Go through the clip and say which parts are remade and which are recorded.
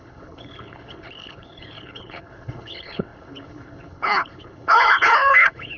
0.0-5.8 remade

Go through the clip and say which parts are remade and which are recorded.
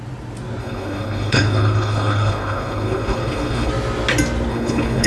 0.0-0.6 recorded; 0.6-3.7 remade; 3.7-4.5 recorded; 4.5-5.1 remade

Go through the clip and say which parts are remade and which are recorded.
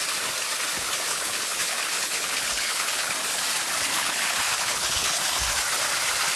0.0-1.1 recorded; 1.1-3.1 remade; 3.1-3.9 recorded; 3.9-5.2 remade; 5.2-6.4 recorded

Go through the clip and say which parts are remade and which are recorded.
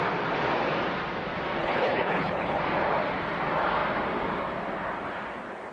0.0-1.6 recorded; 1.6-2.6 remade; 2.6-5.7 recorded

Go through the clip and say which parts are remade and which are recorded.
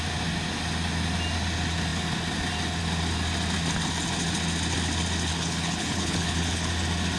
0.0-5.3 recorded; 5.3-6.7 remade; 6.7-7.2 recorded